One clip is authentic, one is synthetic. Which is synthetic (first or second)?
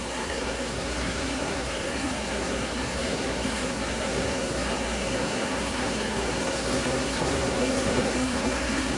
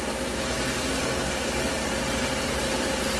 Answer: first